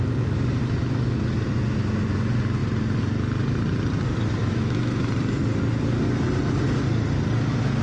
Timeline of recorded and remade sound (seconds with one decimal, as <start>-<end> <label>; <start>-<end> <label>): 0.0-4.4 recorded; 4.4-5.1 remade; 5.1-7.8 recorded